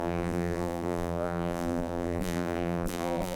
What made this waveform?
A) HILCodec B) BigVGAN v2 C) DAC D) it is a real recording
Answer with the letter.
B